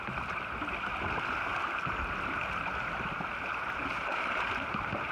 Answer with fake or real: real